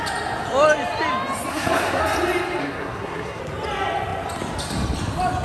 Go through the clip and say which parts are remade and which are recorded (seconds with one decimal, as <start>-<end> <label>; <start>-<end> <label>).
0.0-1.5 recorded; 1.5-2.0 remade; 2.0-2.6 recorded; 2.6-3.4 remade; 3.4-5.4 recorded